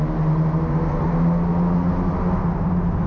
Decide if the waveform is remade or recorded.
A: recorded